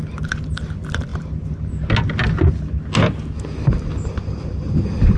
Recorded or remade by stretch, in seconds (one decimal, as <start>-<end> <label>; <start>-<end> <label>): 0.0-0.7 recorded; 0.7-1.1 remade; 1.1-3.7 recorded; 3.7-5.2 remade